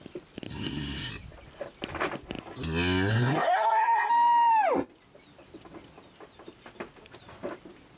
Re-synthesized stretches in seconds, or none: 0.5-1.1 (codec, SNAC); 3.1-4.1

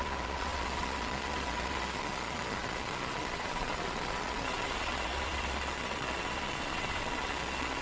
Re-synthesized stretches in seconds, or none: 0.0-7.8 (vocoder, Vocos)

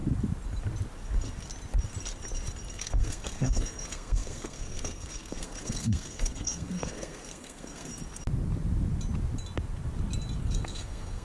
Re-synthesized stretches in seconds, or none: 2.7-7.9 (codec, SNAC); 10.4-11.2